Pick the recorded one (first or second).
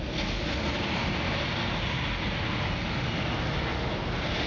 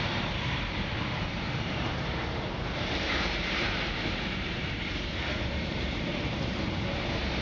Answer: first